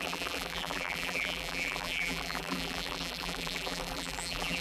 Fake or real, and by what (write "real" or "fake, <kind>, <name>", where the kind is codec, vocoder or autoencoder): fake, vocoder, BigVGAN v2